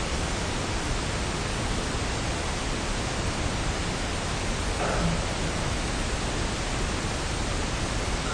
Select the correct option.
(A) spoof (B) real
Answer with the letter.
B